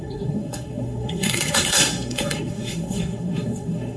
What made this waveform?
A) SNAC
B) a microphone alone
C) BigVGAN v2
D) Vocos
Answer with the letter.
A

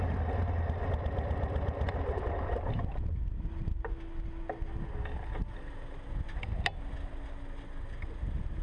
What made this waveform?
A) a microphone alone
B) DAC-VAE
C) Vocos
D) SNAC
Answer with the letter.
A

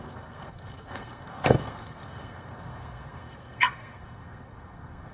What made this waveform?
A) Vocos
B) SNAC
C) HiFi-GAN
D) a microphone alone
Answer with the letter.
B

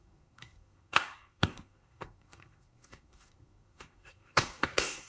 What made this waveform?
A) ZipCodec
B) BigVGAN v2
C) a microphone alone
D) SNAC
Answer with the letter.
D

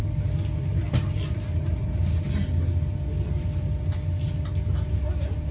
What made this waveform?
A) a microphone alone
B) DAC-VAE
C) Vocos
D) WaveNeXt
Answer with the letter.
A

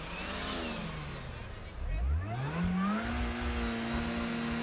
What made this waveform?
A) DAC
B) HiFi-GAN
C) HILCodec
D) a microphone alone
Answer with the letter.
D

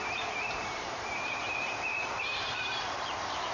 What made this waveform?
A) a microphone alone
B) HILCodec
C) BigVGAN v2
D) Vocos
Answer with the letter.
C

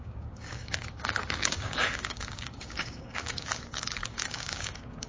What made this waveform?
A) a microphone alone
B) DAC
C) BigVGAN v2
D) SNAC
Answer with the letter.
B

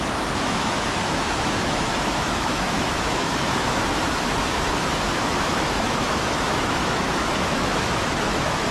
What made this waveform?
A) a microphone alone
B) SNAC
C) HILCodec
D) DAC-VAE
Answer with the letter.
D